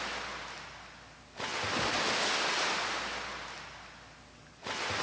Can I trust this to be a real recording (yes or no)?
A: yes